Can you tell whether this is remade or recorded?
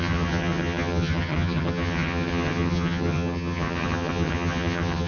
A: remade